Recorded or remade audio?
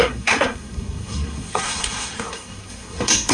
remade